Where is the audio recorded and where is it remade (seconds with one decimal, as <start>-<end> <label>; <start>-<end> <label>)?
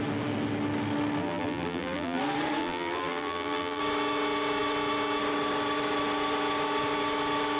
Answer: 0.0-1.2 recorded; 1.2-2.2 remade; 2.2-2.6 recorded; 2.6-3.8 remade; 3.8-7.6 recorded